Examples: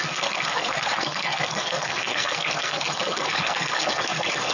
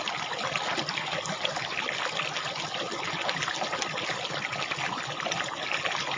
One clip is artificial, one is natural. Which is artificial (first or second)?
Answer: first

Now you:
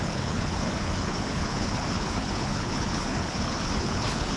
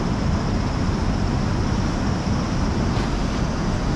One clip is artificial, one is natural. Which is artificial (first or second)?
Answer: first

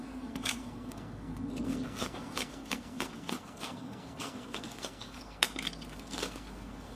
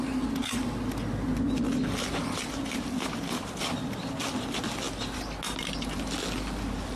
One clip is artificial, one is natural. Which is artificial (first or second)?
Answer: first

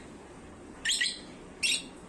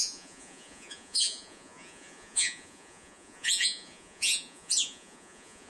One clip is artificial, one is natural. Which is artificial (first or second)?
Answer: second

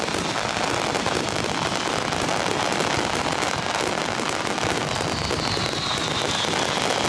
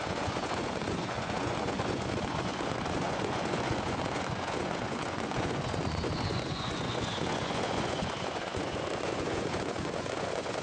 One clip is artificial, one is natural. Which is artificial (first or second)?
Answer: second